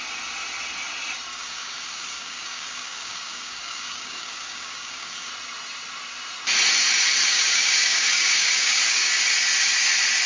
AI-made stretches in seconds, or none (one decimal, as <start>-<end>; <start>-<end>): 1.3-5.3; 7.2-9.2